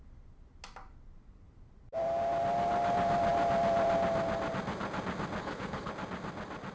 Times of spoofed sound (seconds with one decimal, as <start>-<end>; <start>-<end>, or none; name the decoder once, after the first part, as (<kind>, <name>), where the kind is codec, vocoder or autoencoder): 5.4-5.9 (codec, HILCodec)